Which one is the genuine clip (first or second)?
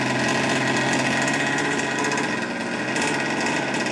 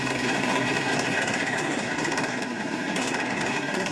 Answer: first